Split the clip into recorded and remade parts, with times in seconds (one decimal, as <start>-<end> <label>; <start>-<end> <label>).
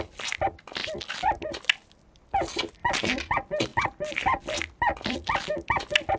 0.0-6.2 recorded